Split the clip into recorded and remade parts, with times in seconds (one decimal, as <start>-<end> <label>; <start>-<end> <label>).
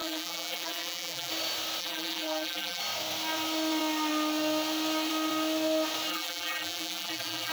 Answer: 0.0-1.3 remade; 1.3-1.8 recorded; 1.8-2.8 remade; 2.8-6.1 recorded; 6.1-7.5 remade